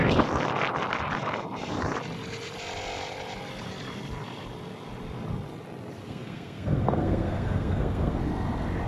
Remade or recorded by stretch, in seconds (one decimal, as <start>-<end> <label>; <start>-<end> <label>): 0.0-6.0 recorded; 6.0-8.2 remade; 8.2-8.9 recorded